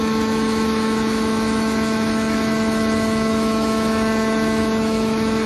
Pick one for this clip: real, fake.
fake